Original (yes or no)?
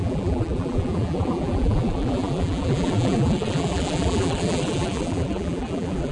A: no